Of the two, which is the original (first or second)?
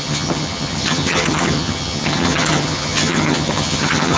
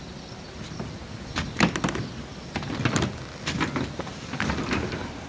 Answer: second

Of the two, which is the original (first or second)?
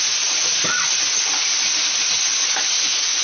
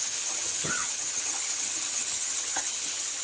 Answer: first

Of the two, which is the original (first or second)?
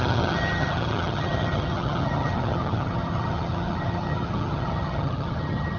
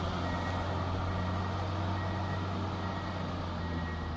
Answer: second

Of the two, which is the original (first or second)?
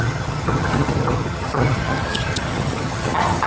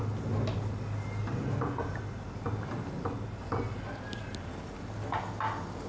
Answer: second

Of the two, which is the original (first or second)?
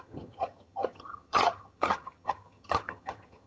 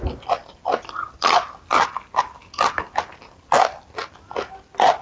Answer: second